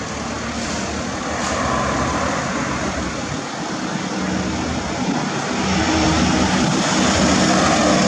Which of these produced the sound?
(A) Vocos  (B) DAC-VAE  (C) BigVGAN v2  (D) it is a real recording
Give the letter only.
D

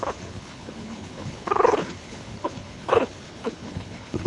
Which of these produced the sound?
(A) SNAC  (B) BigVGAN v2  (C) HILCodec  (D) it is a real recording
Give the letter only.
C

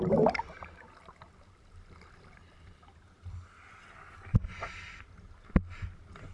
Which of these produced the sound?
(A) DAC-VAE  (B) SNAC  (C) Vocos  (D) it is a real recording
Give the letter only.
D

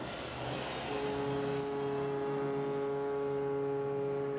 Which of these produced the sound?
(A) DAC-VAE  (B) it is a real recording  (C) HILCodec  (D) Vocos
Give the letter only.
B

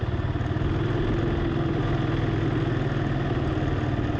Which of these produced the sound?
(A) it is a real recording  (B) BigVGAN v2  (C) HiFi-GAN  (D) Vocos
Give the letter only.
A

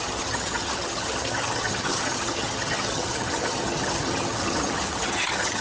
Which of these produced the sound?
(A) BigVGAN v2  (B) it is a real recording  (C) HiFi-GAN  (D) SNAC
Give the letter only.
C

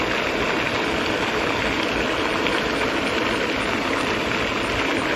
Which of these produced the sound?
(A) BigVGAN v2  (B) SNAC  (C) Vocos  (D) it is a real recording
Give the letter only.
D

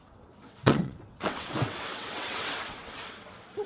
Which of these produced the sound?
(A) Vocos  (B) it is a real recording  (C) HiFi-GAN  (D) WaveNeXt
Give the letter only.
D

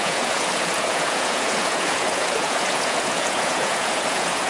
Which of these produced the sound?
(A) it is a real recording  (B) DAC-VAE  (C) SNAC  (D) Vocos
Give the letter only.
D